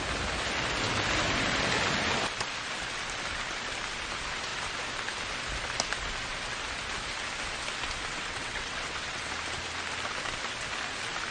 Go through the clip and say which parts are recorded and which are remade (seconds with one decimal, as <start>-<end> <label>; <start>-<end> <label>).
0.0-8.1 recorded; 8.1-9.3 remade; 9.3-11.3 recorded